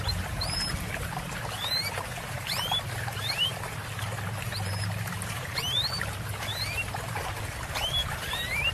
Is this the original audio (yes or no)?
no